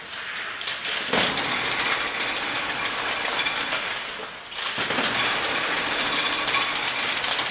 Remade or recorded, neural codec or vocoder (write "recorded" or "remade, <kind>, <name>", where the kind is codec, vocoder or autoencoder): recorded